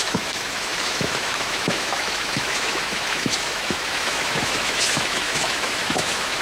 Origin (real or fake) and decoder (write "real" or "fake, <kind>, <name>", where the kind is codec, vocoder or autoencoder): fake, autoencoder, DAC-VAE